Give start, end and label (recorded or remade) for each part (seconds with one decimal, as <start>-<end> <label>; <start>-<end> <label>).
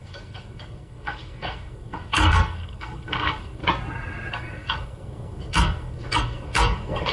0.0-3.6 remade; 3.6-4.3 recorded; 4.3-7.1 remade